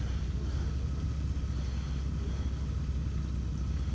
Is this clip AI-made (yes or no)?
no